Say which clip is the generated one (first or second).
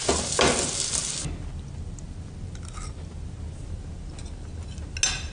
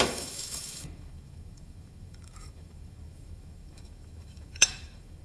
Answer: second